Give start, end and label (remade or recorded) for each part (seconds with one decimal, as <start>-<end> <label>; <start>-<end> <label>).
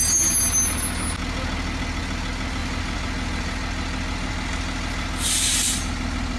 0.0-6.4 recorded